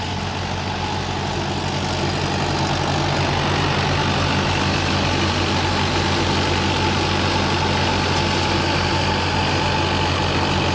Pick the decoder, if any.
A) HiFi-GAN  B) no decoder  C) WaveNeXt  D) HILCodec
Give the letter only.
B